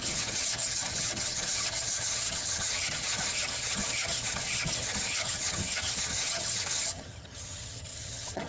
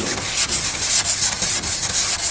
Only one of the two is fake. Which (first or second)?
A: first